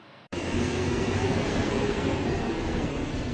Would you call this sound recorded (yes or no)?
no